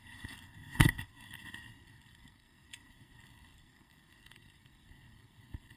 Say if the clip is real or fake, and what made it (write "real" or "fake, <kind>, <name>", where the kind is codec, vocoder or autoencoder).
fake, codec, SNAC